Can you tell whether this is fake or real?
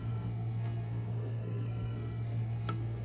fake